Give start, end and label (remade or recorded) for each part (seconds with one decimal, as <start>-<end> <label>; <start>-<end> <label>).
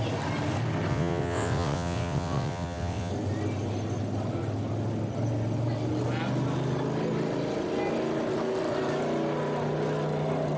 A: 0.0-0.9 recorded; 0.9-3.1 remade; 3.1-10.6 recorded